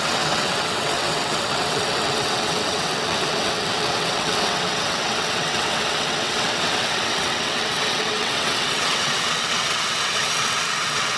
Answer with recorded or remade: remade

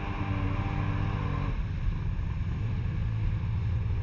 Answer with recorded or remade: recorded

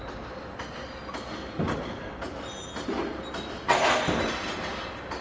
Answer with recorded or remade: recorded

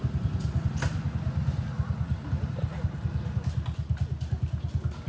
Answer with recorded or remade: recorded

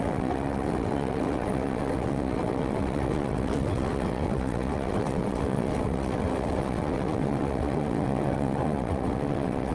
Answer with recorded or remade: remade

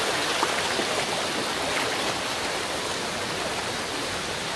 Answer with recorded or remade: recorded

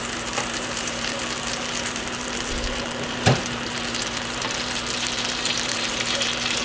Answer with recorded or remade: remade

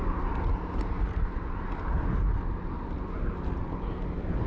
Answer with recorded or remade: recorded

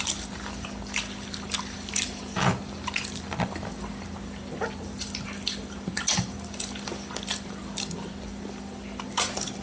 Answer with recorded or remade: remade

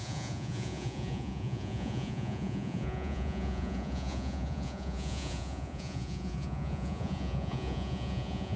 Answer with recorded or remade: remade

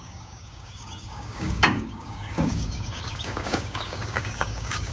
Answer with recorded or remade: remade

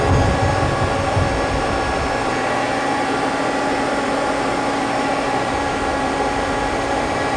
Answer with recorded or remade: recorded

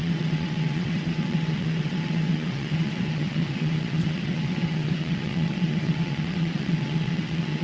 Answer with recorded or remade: remade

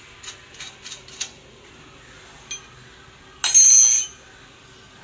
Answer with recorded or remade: recorded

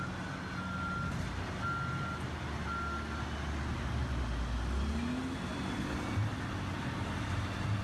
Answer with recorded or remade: recorded